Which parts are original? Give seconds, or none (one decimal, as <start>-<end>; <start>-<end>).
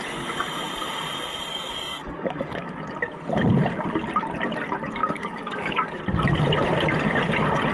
0.0-1.5; 2.7-5.0; 6.0-7.7